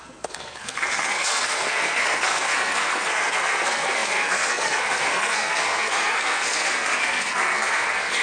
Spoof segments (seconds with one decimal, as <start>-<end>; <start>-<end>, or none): 0.0-8.2